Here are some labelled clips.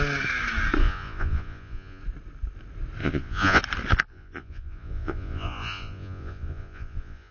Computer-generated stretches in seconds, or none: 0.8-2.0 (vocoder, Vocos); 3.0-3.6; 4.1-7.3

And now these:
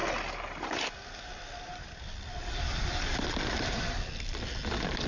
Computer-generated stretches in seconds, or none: none

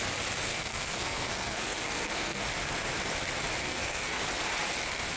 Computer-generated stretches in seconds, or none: 0.5-2.4 (codec, SNAC); 3.6-4.2

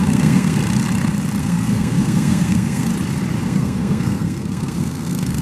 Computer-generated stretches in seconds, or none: 0.0-0.6 (codec, SNAC); 1.4-2.9; 3.4-5.4

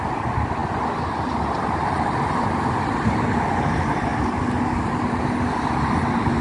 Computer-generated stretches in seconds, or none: none

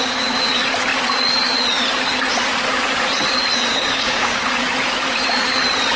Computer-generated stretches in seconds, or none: 0.0-0.5 (codec, DAC); 3.7-4.5

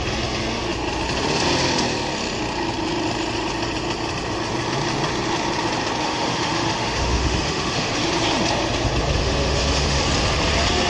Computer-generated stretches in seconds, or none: 6.0-7.9 (autoencoder, DAC-VAE); 9.2-10.0

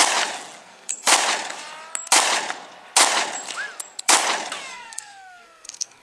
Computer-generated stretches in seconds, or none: 0.6-1.1 (codec, SNAC); 4.7-6.0